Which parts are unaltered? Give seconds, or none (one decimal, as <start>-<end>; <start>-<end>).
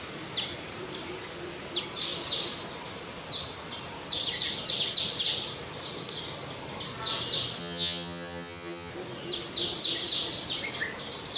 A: 0.0-7.6; 8.9-11.4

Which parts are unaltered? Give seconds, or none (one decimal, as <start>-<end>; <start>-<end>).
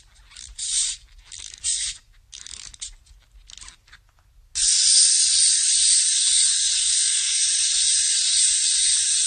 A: 0.0-6.8; 7.4-9.3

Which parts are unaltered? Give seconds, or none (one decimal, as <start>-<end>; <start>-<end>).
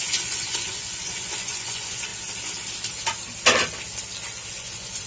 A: 2.1-4.5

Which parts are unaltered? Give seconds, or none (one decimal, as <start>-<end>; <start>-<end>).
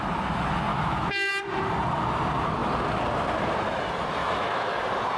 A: 0.0-0.7; 1.3-4.2; 4.7-5.2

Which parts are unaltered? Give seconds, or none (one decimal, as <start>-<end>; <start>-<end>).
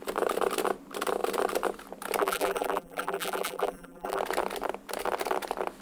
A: 0.0-2.2; 4.2-5.8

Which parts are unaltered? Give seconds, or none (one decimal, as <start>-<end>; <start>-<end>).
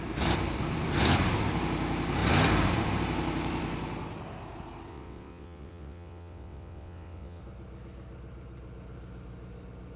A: 0.0-4.9; 7.4-10.0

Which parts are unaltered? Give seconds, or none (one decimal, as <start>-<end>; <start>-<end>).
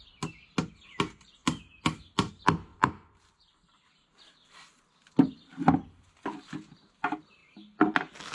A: 0.0-1.4; 2.3-2.7; 5.0-5.5; 6.1-8.3